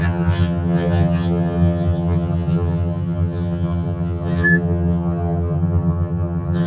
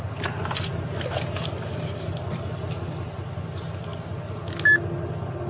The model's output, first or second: first